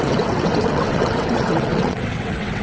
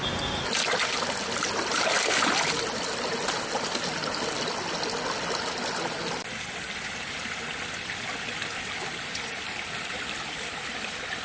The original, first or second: second